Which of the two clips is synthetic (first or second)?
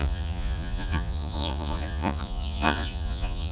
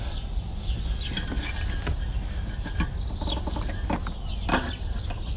first